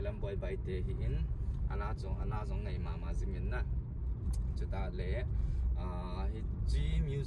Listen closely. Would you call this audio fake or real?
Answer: real